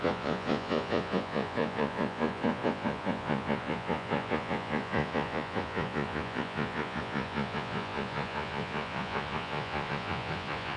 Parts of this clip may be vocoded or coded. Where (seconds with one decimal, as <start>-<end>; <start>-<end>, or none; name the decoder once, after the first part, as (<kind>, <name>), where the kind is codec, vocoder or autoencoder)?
0.0-10.8 (vocoder, Vocos)